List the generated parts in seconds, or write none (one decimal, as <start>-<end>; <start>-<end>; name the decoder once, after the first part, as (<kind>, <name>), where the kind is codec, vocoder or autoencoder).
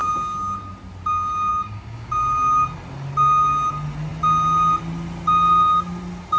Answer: 1.5-2.1 (codec, DAC)